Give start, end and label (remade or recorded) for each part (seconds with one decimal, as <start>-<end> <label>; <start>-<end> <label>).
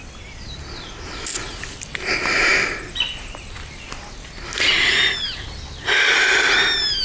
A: 0.0-7.0 recorded